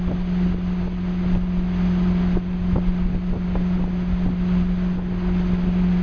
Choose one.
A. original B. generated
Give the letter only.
A